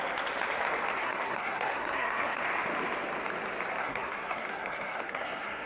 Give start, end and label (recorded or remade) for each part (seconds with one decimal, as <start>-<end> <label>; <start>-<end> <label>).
0.0-1.0 recorded; 1.0-2.4 remade; 2.4-3.8 recorded; 3.8-5.7 remade